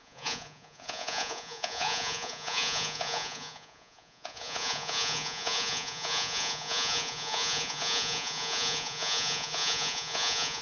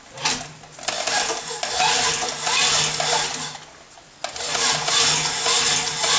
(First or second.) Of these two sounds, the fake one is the first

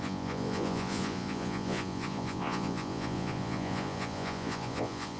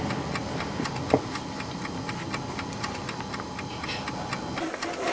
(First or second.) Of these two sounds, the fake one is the first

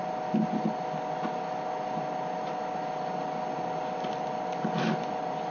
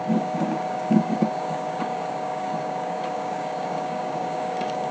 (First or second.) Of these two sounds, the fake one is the second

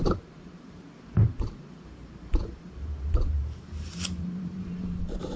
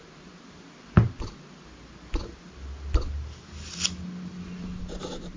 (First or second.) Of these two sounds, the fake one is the first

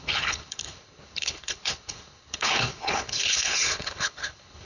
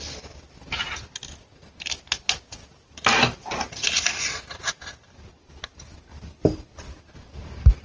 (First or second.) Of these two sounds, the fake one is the first